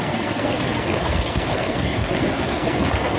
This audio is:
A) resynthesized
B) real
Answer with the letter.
A